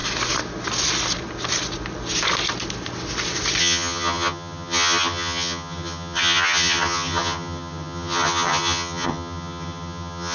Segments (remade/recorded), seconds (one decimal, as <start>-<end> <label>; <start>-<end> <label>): 0.0-3.6 recorded; 3.6-10.3 remade

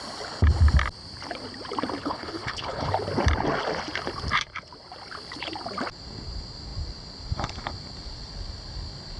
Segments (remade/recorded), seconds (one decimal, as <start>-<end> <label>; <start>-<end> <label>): 0.0-2.0 recorded; 2.0-2.9 remade; 2.9-9.2 recorded

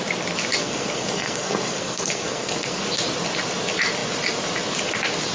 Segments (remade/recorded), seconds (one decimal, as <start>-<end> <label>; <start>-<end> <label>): 0.0-0.6 recorded; 0.6-2.8 remade; 2.8-5.3 recorded